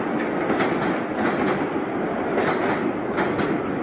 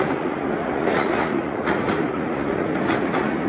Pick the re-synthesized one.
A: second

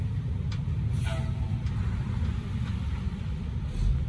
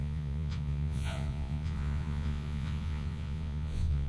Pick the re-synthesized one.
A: second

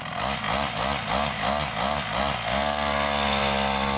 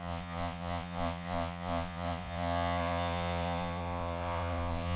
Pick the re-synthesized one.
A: second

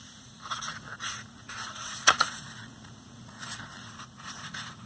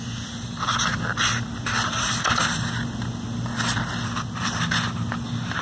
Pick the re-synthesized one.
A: first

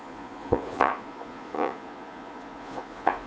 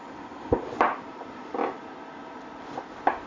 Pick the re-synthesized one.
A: first